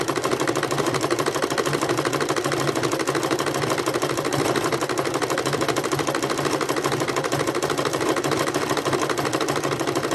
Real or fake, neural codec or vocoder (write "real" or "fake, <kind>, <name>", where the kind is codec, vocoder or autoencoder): real